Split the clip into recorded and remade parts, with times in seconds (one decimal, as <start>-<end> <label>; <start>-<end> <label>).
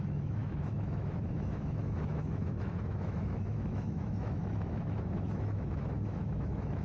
0.0-6.8 remade